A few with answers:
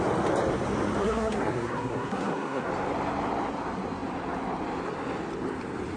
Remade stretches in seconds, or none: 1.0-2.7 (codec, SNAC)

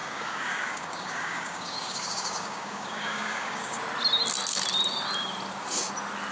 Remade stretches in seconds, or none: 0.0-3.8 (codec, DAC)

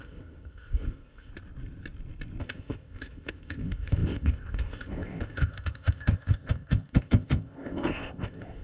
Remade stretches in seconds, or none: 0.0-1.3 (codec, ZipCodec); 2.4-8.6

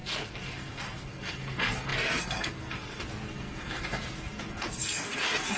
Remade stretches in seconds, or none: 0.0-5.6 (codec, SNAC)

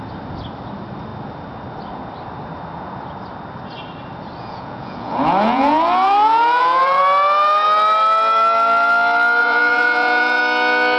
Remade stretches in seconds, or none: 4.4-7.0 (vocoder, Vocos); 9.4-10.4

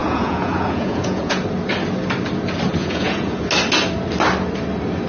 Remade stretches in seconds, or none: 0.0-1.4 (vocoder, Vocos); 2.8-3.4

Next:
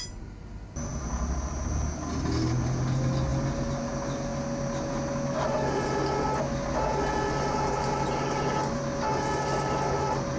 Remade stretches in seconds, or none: none